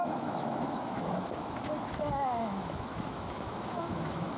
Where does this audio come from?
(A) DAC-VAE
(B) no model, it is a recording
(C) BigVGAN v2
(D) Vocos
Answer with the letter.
A